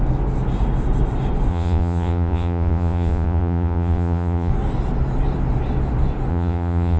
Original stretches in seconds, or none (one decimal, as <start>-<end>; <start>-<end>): 0.0-1.5; 4.5-6.3